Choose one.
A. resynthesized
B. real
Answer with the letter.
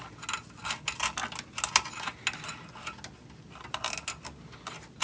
B